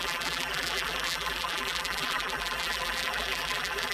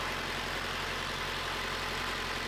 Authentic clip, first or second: second